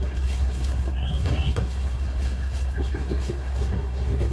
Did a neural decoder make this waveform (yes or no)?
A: yes